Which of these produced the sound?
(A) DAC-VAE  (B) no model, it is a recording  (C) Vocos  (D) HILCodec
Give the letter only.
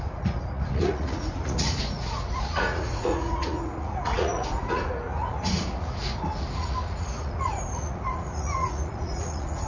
C